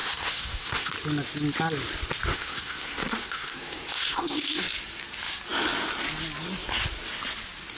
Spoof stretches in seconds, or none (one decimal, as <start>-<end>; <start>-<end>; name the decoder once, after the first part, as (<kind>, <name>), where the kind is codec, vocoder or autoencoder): 0.0-0.9 (codec, SNAC); 2.3-4.6